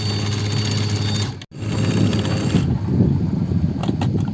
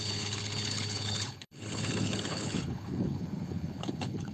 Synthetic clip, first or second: second